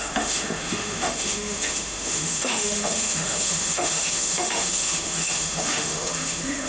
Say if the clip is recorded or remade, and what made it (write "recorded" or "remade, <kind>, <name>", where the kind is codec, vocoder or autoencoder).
remade, autoencoder, DAC-VAE